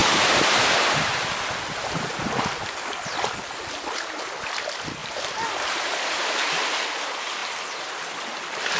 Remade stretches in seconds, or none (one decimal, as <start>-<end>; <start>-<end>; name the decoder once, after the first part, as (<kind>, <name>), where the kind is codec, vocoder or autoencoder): 0.0-0.7 (vocoder, BigVGAN v2); 5.0-6.6